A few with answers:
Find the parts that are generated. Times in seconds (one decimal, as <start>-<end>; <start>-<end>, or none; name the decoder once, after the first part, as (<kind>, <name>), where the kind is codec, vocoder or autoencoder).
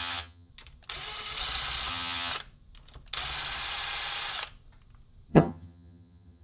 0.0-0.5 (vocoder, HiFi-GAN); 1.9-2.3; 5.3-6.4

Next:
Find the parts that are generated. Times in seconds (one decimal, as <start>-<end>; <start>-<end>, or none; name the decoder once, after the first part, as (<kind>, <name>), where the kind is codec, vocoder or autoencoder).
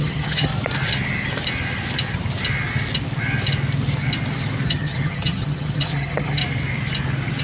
0.0-0.5 (vocoder, HiFi-GAN); 4.7-6.4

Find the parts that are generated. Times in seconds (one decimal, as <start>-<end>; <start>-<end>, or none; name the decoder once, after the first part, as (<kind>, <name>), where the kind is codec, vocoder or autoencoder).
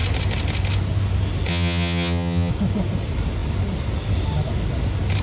1.5-2.5 (vocoder, HiFi-GAN)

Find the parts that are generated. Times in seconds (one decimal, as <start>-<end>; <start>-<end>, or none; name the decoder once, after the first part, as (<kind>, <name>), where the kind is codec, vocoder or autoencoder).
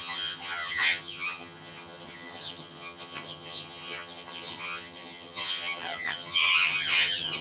0.0-7.4 (vocoder, HiFi-GAN)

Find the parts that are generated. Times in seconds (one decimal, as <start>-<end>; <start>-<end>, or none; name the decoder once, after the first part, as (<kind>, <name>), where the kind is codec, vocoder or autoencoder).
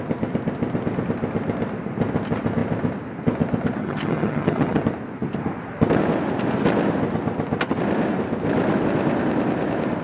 3.8-4.8 (vocoder, HiFi-GAN)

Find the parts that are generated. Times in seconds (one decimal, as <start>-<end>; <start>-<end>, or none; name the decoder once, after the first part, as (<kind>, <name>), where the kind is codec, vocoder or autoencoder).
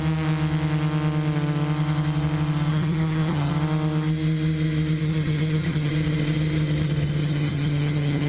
2.7-3.5 (vocoder, HiFi-GAN); 5.0-5.9; 7.2-8.3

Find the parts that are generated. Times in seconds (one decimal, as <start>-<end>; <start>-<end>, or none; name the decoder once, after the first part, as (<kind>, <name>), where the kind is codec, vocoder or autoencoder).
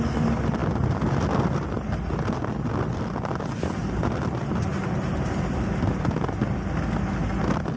none